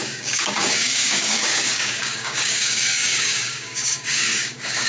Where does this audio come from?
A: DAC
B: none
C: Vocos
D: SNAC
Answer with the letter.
A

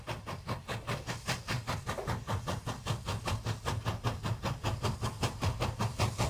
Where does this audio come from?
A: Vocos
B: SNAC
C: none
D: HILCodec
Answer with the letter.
C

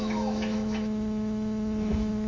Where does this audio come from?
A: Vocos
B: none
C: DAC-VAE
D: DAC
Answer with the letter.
C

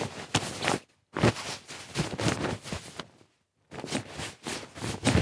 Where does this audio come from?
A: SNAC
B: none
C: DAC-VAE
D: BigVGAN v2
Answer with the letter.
B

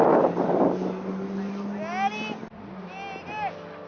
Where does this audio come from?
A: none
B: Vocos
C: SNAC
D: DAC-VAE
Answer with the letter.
A